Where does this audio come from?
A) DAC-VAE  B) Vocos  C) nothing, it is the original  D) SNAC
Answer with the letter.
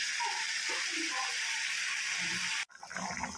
C